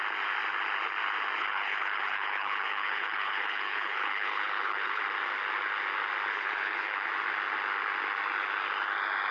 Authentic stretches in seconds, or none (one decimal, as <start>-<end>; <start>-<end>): 0.0-1.4; 5.0-6.3; 7.1-9.3